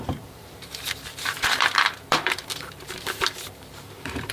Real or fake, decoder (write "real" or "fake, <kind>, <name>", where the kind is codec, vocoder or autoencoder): fake, vocoder, BigVGAN v2